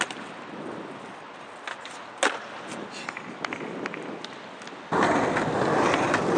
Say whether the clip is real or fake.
real